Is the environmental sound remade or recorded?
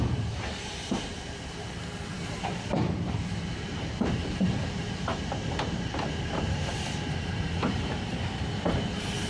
remade